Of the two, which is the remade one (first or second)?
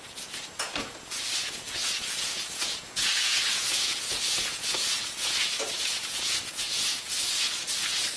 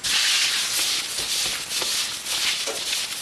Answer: first